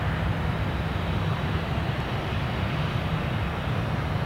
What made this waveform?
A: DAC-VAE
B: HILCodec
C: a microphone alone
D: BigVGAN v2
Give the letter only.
C